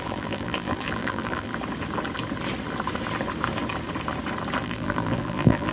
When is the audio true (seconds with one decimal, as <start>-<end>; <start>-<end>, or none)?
1.5-4.6